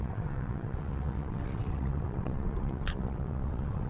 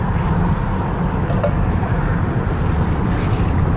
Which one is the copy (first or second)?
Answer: first